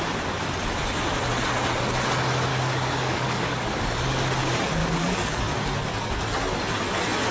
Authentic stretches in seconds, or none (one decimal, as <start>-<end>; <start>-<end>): 0.0-2.5; 4.3-4.8; 5.4-7.3